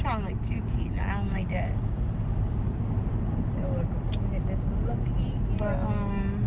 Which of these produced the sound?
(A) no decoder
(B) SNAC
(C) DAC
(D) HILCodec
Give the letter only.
A